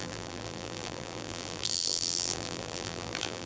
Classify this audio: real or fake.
fake